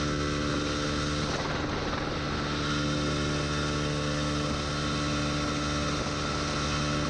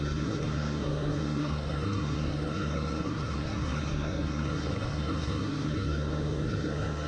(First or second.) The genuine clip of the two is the first